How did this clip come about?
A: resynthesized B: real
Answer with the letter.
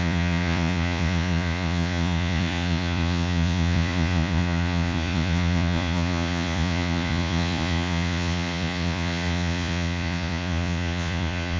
A